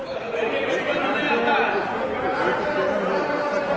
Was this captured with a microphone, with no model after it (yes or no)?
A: yes